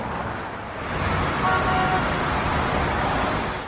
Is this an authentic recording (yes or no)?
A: yes